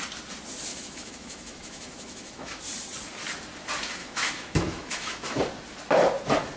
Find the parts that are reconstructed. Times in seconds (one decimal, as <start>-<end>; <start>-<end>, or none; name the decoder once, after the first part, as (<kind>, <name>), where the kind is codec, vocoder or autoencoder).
0.7-2.6 (autoencoder, DAC-VAE); 4.0-5.4